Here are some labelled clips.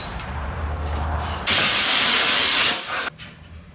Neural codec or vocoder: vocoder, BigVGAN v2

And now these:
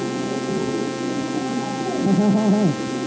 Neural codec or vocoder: none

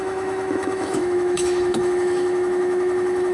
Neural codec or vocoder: autoencoder, DAC-VAE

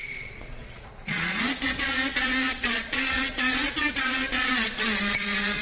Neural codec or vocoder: vocoder, Vocos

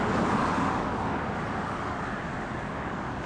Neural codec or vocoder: codec, DAC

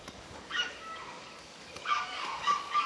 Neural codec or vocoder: codec, DAC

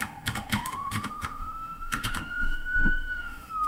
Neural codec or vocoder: autoencoder, DAC-VAE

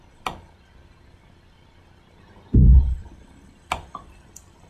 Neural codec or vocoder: none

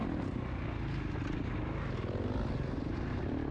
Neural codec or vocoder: none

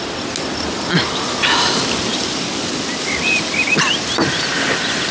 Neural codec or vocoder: none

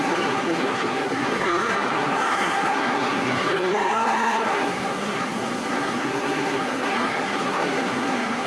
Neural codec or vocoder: codec, SNAC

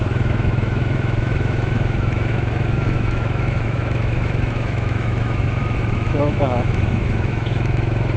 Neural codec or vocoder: autoencoder, DAC-VAE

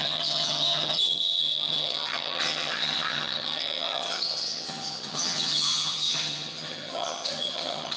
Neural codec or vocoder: vocoder, HiFi-GAN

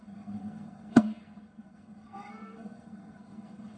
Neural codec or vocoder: codec, SNAC